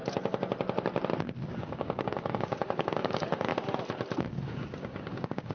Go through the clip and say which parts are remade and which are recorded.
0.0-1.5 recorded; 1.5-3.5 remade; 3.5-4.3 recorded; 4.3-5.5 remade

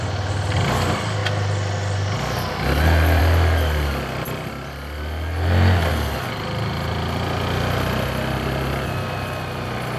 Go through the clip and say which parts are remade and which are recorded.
0.0-10.0 recorded

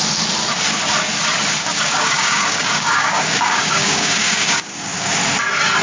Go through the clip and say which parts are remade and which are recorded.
0.0-1.6 recorded; 1.6-5.1 remade; 5.1-5.8 recorded

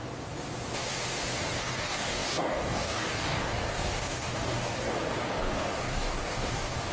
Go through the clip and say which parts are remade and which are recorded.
0.0-1.6 recorded; 1.6-6.9 remade

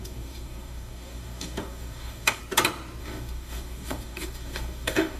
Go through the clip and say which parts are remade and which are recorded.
0.0-2.4 remade; 2.4-3.0 recorded; 3.0-5.2 remade